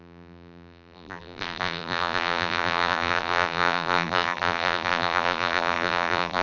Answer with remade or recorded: remade